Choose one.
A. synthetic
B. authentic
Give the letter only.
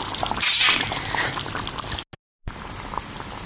B